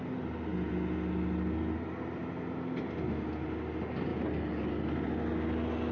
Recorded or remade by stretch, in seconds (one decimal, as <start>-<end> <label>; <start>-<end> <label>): 0.0-5.9 recorded